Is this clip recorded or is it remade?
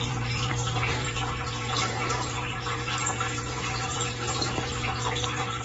remade